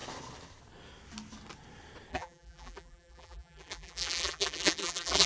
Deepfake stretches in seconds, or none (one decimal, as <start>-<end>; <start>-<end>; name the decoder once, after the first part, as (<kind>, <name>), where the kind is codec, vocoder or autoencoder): 2.1-5.3 (vocoder, BigVGAN v2)